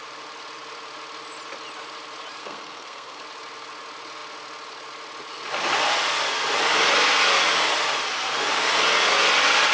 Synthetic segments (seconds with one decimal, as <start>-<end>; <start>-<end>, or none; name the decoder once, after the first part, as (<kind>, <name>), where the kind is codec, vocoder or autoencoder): 2.4-3.2 (codec, SNAC)